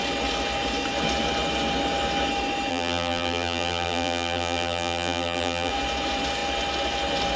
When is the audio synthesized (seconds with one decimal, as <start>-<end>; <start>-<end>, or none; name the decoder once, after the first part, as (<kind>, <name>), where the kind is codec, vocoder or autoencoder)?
2.7-5.7 (vocoder, BigVGAN v2)